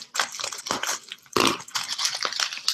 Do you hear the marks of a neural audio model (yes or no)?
no